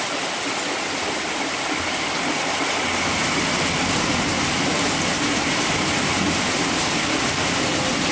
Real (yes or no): yes